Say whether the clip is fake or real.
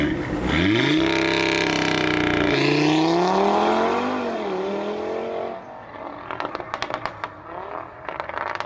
real